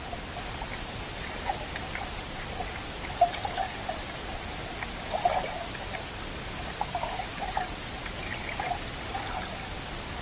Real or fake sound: real